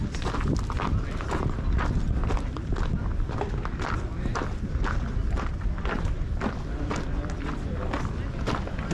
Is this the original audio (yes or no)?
yes